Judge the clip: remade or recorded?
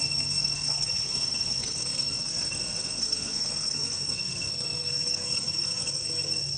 remade